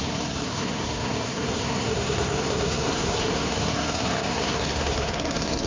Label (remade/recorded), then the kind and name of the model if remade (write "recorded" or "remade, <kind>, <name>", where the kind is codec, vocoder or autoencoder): remade, codec, SNAC